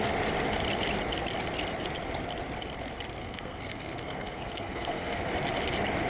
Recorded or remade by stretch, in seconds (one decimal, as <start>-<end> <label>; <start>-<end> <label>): 0.0-3.2 recorded; 3.2-5.2 remade; 5.2-6.1 recorded